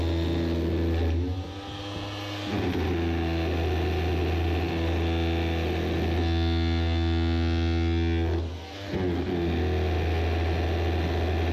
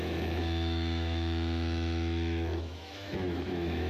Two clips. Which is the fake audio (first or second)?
second